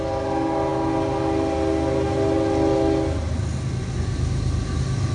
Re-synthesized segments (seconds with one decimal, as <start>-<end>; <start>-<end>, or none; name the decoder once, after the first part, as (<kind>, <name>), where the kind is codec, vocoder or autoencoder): none